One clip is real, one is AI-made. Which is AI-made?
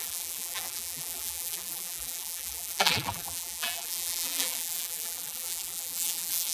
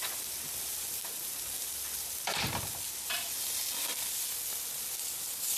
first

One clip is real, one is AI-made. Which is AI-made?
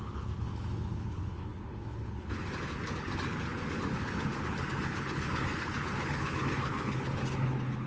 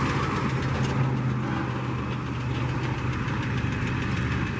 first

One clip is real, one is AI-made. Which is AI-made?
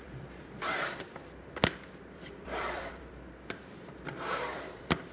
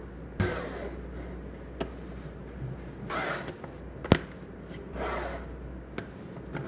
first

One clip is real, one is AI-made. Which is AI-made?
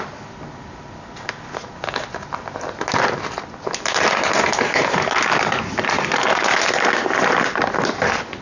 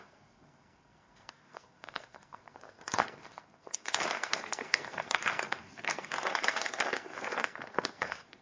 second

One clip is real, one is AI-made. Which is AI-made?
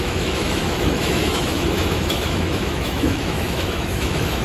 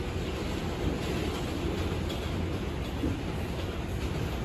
first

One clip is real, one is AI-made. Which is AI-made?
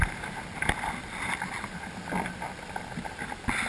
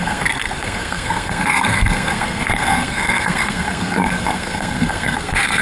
second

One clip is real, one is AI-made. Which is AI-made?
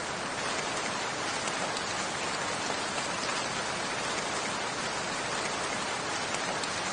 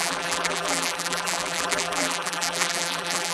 second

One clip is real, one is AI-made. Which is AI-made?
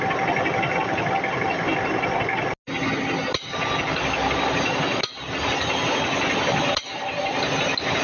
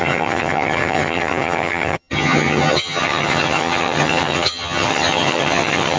second